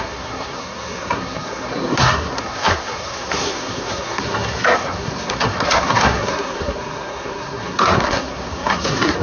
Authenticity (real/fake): fake